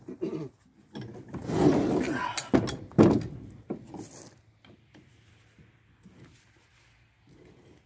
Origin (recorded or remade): recorded